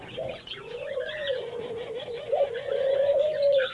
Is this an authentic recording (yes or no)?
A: no